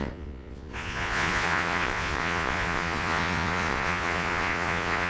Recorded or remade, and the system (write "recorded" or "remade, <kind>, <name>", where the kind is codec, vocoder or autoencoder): remade, vocoder, Vocos